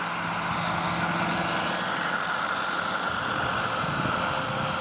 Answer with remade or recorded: recorded